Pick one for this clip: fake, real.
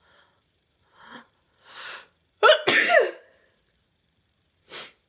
fake